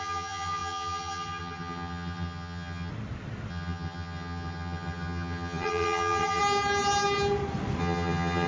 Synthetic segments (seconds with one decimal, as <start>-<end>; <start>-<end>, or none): 0.0-2.9; 3.5-6.4; 7.8-8.5